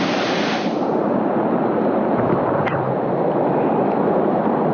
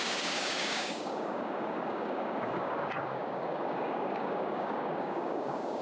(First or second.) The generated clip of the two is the second